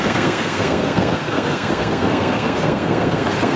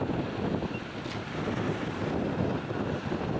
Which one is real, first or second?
second